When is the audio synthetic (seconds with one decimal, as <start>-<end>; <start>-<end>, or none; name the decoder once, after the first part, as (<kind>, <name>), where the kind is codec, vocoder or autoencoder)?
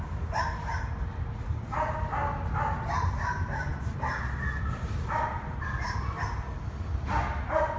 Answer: none